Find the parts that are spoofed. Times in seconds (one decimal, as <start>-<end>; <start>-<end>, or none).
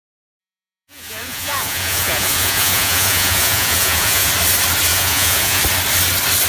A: 0.4-4.3; 4.9-5.6